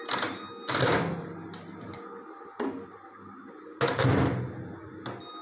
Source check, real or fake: real